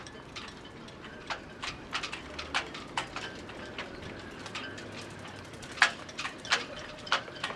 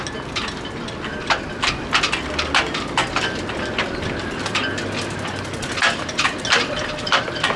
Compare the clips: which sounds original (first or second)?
second